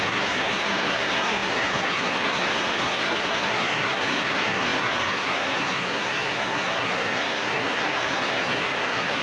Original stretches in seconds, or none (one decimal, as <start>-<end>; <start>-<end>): none